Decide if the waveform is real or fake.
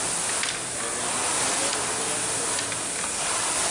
real